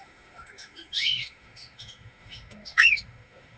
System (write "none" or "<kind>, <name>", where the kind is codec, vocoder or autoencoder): autoencoder, DAC-VAE